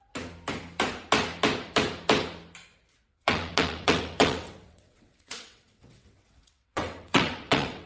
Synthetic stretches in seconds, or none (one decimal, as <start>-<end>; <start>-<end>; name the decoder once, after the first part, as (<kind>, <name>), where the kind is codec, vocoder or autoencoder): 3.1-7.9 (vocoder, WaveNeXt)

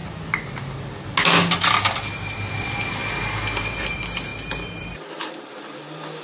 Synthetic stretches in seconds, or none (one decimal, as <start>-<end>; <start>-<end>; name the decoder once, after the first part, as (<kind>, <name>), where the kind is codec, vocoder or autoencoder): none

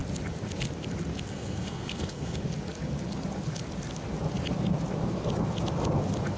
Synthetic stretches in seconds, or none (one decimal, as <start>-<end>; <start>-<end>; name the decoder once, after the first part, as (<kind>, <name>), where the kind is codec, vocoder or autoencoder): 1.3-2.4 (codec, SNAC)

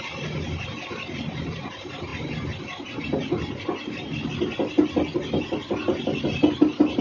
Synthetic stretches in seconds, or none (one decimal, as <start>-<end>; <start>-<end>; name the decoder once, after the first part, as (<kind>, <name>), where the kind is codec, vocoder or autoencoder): none